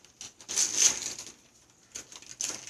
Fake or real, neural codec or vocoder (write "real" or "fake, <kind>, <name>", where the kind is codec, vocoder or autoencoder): real